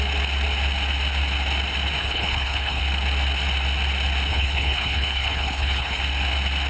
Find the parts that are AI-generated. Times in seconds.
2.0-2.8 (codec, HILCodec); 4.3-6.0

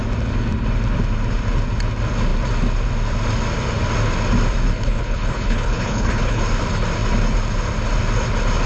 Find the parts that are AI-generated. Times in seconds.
4.7-6.4 (codec, HILCodec)